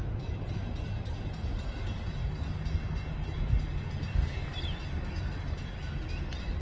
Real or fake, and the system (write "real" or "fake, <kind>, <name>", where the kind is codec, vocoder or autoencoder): real